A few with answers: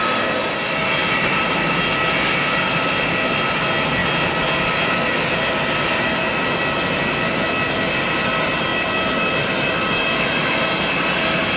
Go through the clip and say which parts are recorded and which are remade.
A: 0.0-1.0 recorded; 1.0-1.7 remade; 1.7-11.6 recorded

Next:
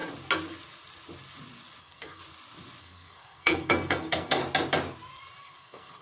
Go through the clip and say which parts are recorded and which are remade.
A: 0.0-1.8 recorded; 1.8-2.2 remade; 2.2-2.8 recorded; 2.8-4.4 remade; 4.4-5.4 recorded; 5.4-6.0 remade

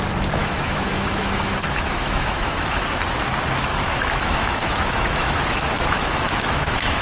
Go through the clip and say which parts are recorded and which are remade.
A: 0.0-0.4 recorded; 0.4-3.0 remade; 3.0-3.7 recorded; 3.7-7.0 remade

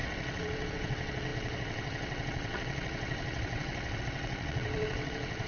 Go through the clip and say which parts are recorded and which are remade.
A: 0.0-5.5 remade

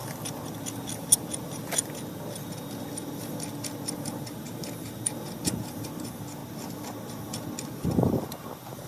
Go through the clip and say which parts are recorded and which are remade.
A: 0.0-3.9 recorded; 3.9-6.4 remade; 6.4-7.7 recorded; 7.7-8.9 remade

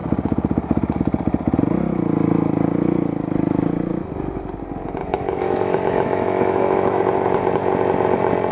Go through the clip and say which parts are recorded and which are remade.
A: 0.0-5.0 recorded; 5.0-7.0 remade; 7.0-8.5 recorded

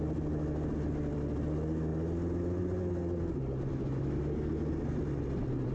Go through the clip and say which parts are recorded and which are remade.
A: 0.0-3.7 recorded; 3.7-4.2 remade; 4.2-5.7 recorded